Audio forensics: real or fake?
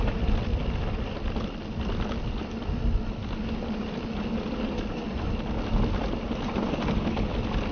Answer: real